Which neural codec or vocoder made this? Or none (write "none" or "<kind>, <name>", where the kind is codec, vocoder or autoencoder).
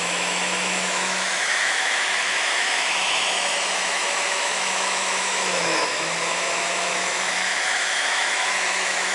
autoencoder, DAC-VAE